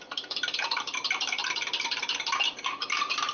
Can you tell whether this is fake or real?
real